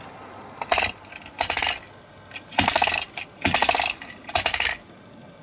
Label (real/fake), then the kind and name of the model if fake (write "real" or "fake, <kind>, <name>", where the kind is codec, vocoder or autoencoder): real